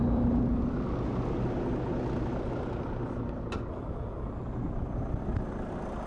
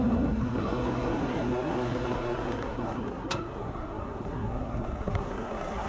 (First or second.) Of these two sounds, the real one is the first